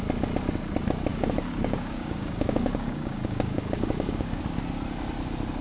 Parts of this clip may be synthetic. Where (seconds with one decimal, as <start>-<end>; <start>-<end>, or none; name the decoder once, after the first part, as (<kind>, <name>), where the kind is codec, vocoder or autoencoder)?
1.1-4.4 (codec, DAC)